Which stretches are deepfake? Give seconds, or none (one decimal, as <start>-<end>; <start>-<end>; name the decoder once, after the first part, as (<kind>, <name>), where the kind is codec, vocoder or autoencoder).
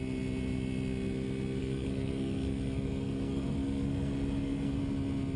1.6-4.8 (codec, SNAC)